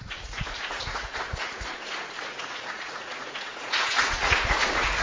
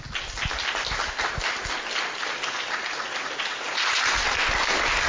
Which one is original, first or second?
second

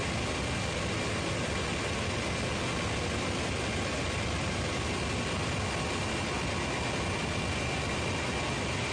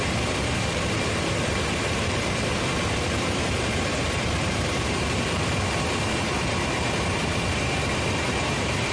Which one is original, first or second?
first